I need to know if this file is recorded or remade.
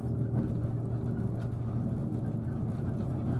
recorded